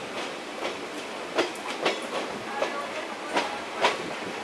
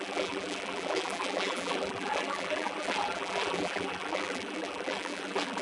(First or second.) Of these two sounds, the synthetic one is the second